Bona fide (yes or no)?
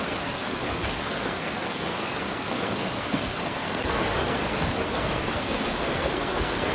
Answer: no